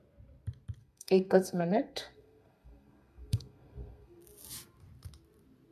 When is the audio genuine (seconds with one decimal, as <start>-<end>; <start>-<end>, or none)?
0.0-0.8; 4.2-5.7

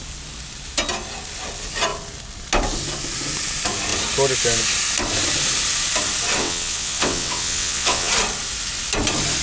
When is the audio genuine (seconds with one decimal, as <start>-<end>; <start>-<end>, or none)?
0.0-6.4; 8.1-9.4

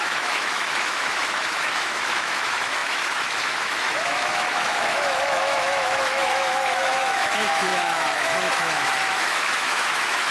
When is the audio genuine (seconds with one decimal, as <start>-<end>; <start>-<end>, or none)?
none

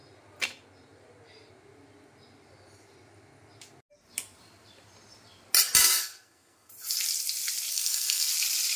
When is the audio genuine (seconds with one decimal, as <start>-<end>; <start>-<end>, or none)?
0.0-5.8; 6.7-7.7; 8.3-8.8

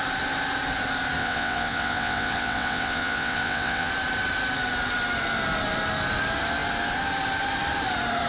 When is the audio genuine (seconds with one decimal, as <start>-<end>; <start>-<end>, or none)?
0.0-1.2; 3.9-8.3

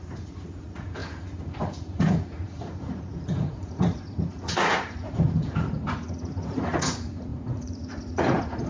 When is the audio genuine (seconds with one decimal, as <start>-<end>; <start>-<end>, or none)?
none

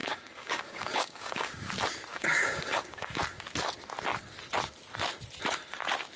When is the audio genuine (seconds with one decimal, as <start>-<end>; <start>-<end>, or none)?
1.7-2.1; 3.2-6.2